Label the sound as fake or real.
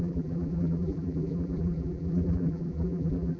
fake